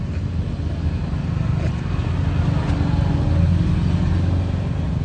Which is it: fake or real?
real